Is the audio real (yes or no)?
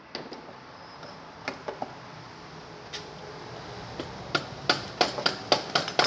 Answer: yes